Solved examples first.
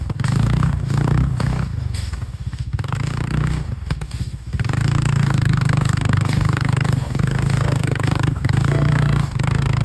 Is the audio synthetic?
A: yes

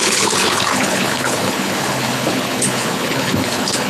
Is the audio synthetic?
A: yes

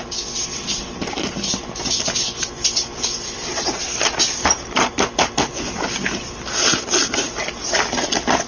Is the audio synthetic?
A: no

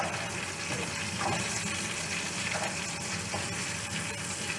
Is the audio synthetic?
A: no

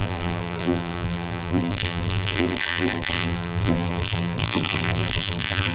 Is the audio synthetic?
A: yes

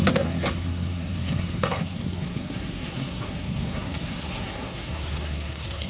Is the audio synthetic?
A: yes